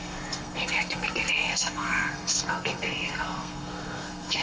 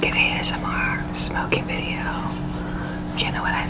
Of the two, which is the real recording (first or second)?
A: second